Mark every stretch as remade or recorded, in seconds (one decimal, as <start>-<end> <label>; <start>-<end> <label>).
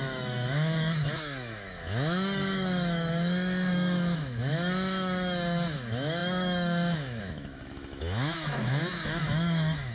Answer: 0.0-9.9 remade